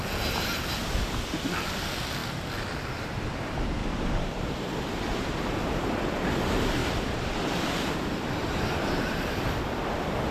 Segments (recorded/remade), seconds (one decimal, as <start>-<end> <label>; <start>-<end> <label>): 0.0-2.2 recorded; 2.2-3.4 remade; 3.4-3.8 recorded; 3.8-4.6 remade; 4.6-6.8 recorded; 6.8-9.6 remade; 9.6-10.3 recorded